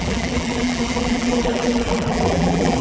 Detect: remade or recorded remade